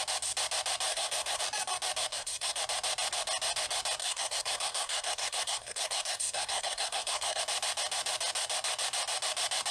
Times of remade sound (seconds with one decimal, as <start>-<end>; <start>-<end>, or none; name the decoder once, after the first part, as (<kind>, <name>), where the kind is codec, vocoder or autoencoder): 0.9-1.4 (codec, SNAC); 2.1-2.6; 4.0-7.4